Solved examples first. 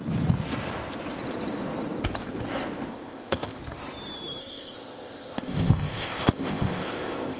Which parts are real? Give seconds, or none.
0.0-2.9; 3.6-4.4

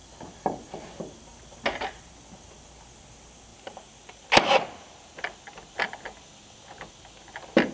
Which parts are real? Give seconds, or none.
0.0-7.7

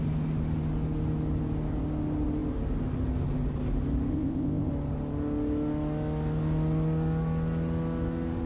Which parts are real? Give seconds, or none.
0.0-4.1; 4.7-8.5

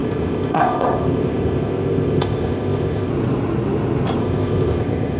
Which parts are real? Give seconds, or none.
3.1-4.2